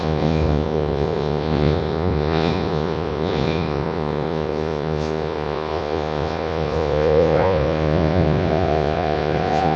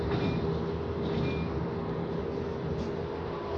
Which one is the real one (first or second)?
second